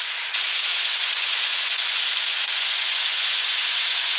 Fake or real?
fake